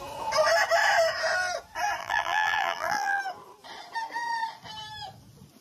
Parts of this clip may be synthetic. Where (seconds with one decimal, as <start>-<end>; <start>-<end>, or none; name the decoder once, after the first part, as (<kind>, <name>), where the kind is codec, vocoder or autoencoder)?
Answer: 2.0-3.2 (vocoder, BigVGAN v2)